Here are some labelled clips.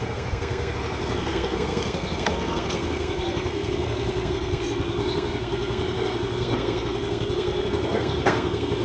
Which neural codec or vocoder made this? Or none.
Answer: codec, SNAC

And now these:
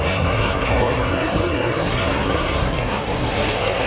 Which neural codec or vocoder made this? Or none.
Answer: codec, SNAC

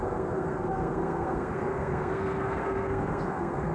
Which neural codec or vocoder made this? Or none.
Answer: codec, SNAC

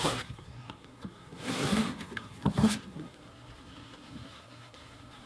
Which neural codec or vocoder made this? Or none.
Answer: codec, SNAC